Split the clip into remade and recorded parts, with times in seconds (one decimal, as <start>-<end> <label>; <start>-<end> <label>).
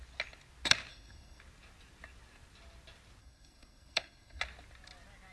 0.0-0.9 recorded; 0.9-1.4 remade; 1.4-3.2 recorded; 3.2-4.4 remade; 4.4-5.3 recorded